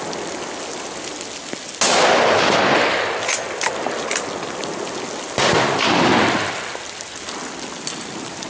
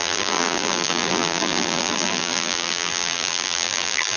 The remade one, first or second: second